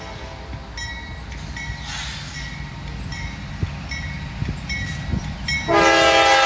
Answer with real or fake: real